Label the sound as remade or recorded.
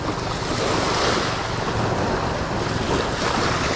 recorded